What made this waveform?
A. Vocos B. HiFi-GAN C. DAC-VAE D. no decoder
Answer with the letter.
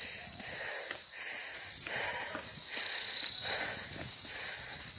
D